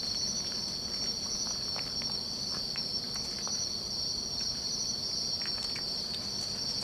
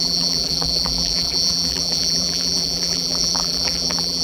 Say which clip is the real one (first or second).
first